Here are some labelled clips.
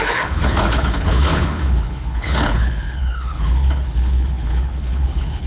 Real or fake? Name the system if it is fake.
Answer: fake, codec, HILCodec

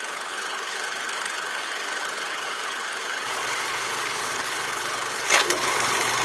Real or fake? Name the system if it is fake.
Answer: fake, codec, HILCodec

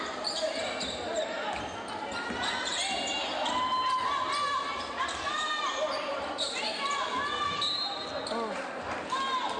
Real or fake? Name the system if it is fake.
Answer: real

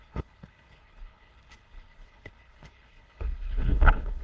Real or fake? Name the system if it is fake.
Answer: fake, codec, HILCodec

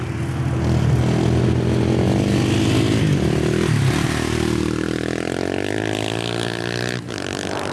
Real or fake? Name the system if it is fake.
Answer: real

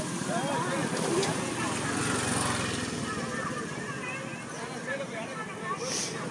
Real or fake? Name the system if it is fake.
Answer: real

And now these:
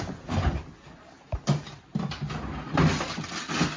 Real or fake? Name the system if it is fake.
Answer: real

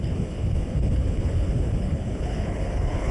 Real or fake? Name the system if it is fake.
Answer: fake, codec, HILCodec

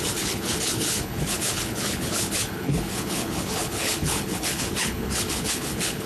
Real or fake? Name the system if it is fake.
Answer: fake, codec, HILCodec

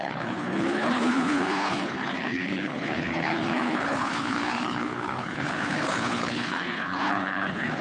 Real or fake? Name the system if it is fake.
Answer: fake, codec, HILCodec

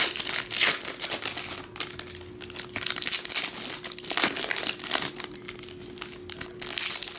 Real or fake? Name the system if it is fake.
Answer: real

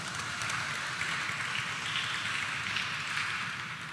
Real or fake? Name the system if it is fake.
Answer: real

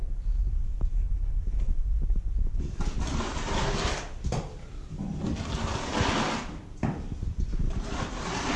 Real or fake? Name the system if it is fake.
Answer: real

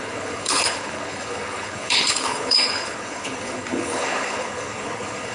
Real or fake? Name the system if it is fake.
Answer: fake, codec, HILCodec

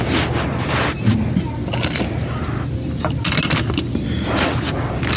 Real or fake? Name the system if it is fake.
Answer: real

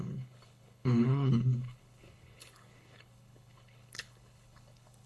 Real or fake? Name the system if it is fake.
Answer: fake, codec, HILCodec